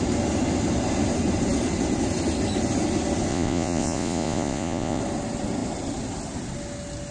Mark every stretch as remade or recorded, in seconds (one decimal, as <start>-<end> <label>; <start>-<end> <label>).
0.0-3.3 recorded; 3.3-5.0 remade; 5.0-7.1 recorded